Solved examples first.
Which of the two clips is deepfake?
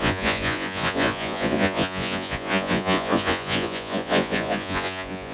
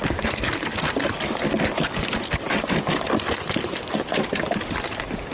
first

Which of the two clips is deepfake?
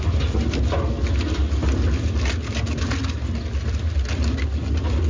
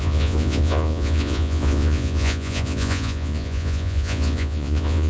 second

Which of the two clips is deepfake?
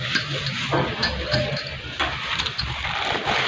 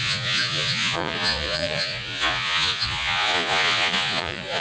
second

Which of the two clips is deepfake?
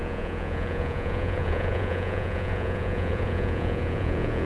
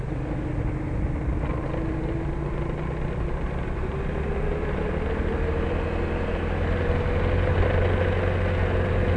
first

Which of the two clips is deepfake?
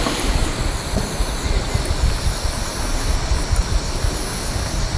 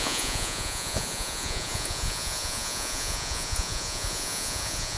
second